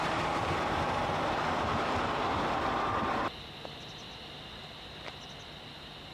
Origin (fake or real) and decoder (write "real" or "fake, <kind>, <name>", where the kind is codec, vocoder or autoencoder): real